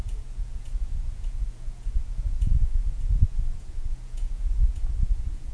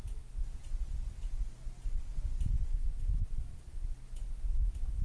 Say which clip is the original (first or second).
second